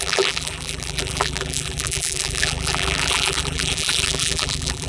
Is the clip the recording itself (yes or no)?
no